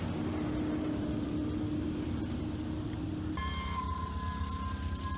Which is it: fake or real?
real